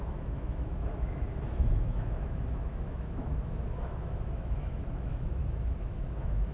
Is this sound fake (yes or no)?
yes